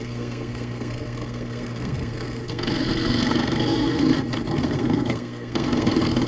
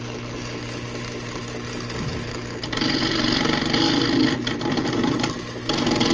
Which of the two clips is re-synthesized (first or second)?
first